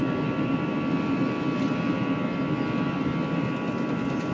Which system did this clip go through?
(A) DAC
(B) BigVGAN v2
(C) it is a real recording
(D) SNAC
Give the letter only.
C